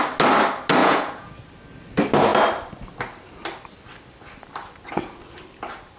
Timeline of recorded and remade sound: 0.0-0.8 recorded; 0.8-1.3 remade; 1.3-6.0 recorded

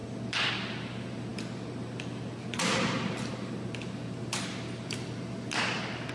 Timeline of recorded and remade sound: 0.0-6.1 recorded